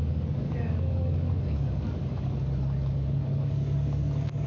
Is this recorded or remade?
remade